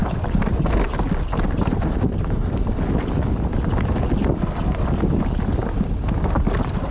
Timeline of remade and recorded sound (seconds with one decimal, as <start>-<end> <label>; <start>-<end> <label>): 0.0-6.9 recorded